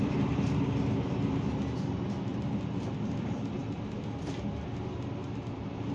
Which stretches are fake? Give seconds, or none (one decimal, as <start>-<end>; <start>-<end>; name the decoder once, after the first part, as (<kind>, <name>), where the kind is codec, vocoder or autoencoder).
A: none